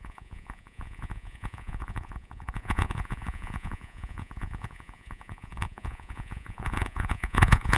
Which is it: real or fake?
fake